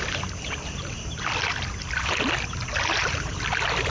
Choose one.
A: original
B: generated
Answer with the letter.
A